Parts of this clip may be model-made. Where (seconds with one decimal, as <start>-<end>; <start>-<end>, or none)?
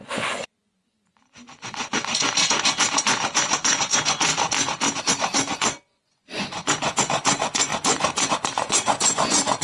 0.0-4.3; 5.0-9.6